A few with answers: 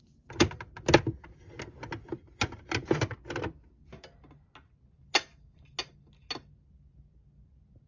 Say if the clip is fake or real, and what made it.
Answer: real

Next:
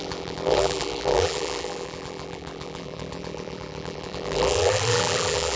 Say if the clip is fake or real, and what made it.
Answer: fake, vocoder, BigVGAN v2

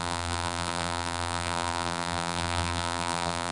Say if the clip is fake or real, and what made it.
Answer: fake, vocoder, BigVGAN v2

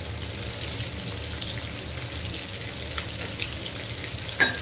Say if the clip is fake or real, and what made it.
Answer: real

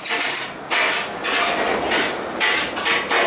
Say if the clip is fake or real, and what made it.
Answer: real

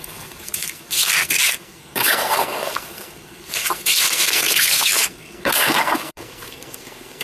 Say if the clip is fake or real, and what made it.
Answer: fake, codec, SNAC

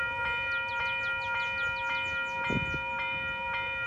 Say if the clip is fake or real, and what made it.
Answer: real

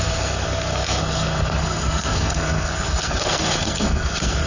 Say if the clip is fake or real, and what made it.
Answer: fake, codec, SNAC